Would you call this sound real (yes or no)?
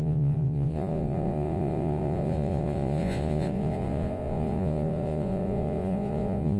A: no